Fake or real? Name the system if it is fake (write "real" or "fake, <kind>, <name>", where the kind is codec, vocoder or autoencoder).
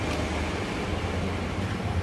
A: real